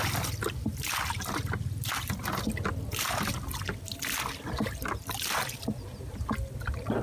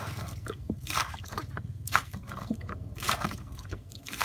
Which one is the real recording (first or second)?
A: first